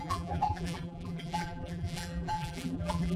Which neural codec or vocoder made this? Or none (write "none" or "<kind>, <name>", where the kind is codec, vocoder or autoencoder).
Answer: vocoder, BigVGAN v2